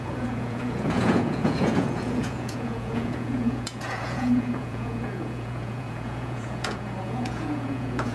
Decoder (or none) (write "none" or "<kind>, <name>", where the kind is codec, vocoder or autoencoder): vocoder, Vocos